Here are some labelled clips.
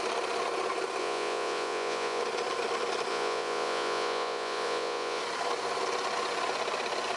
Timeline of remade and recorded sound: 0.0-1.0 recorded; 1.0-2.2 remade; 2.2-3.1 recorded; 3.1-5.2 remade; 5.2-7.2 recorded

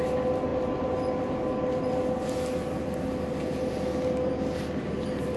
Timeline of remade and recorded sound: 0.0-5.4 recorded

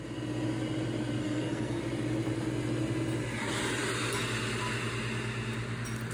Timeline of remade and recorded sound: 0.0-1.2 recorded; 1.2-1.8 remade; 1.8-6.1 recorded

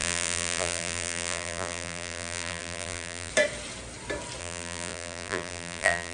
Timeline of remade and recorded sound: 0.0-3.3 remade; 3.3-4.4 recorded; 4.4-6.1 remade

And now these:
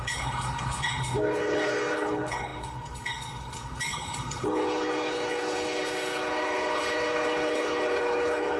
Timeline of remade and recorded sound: 0.0-8.6 remade

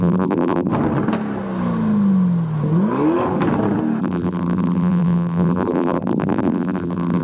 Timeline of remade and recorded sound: 0.0-0.7 remade; 0.7-4.0 recorded; 4.0-7.2 remade

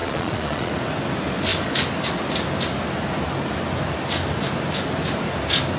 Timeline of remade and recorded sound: 0.0-0.7 remade; 0.7-5.8 recorded